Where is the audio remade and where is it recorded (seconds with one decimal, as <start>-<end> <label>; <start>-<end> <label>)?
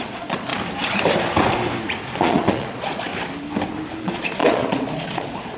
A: 0.0-0.5 remade; 0.5-2.2 recorded; 2.2-3.1 remade; 3.1-4.0 recorded; 4.0-5.6 remade